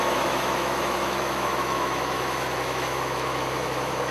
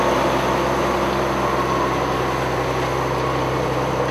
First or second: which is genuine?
second